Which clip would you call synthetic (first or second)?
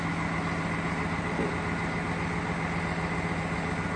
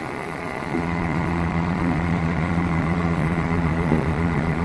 second